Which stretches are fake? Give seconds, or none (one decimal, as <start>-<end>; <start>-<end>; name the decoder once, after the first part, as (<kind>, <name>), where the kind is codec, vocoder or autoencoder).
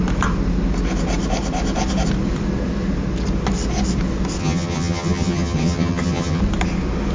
4.4-6.4 (vocoder, HiFi-GAN)